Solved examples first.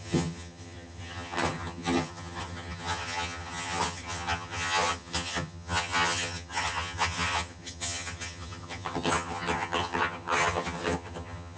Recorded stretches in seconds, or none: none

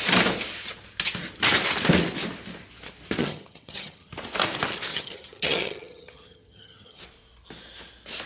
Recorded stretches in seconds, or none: 0.0-3.2; 4.1-4.9; 7.0-8.3

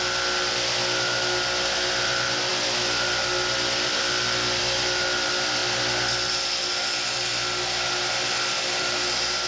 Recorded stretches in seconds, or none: 0.0-9.5

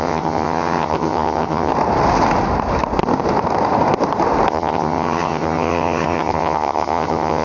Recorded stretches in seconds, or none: 1.7-4.5

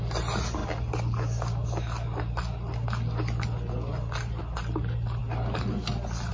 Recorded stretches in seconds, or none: 0.0-6.3

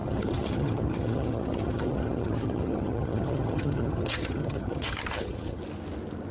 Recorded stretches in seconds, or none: 5.6-6.3

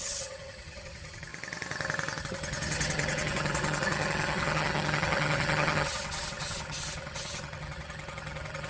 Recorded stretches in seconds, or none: 1.3-2.2